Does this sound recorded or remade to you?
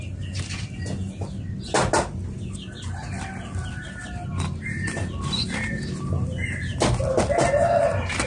recorded